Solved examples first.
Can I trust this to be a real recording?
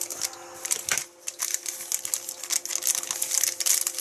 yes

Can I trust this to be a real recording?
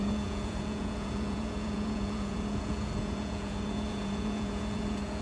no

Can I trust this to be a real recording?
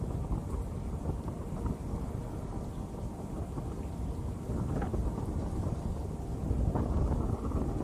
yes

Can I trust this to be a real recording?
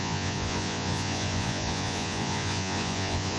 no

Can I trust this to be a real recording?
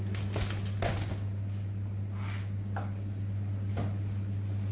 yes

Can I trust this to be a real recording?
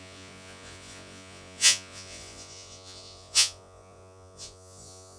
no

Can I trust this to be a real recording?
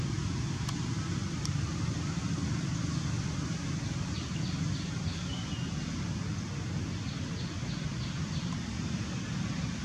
yes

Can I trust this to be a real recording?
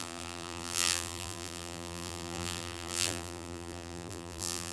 no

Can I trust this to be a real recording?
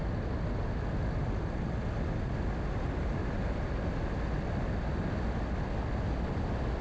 yes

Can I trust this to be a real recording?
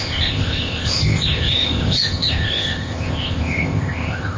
no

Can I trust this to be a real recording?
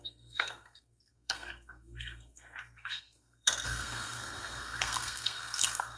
no